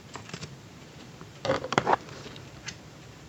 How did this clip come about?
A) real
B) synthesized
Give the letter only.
B